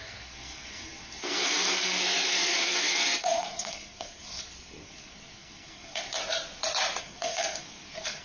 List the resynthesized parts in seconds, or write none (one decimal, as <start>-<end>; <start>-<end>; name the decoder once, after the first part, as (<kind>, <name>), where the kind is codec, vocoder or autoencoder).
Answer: 0.0-6.2 (codec, SNAC); 7.0-8.2